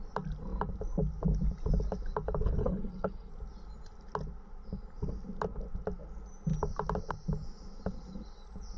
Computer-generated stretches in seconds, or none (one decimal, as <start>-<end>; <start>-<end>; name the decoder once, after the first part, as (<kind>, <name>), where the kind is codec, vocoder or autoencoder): 2.6-3.3 (codec, HILCodec)